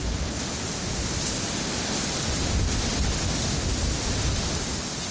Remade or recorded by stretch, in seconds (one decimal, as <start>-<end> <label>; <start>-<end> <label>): 0.0-5.1 recorded